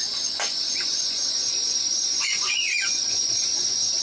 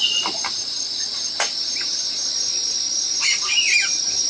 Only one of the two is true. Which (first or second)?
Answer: second